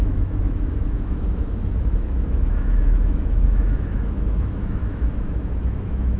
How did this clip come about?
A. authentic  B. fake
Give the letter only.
B